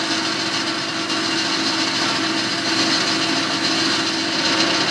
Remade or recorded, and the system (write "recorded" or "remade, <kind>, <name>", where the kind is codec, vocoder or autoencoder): recorded